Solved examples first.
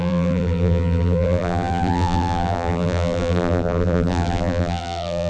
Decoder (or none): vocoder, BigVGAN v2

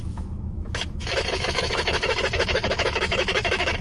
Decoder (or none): autoencoder, DAC-VAE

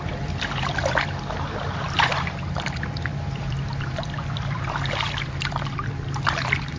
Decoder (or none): vocoder, BigVGAN v2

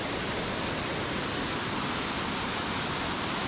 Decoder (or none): none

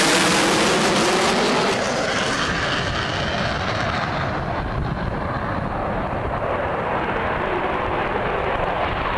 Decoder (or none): none